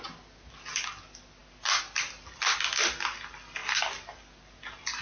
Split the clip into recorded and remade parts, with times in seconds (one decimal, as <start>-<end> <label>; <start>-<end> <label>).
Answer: 0.0-5.0 recorded